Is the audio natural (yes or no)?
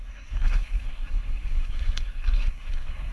no